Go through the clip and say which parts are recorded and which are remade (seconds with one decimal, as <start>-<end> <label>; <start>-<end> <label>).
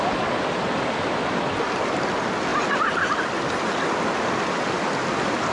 0.0-5.5 recorded